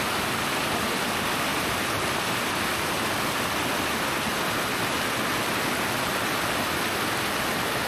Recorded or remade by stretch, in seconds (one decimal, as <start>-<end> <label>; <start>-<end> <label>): 0.0-7.9 recorded